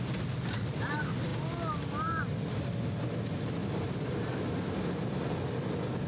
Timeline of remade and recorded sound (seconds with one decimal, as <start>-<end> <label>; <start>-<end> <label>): 0.0-3.6 recorded; 3.6-5.4 remade; 5.4-6.1 recorded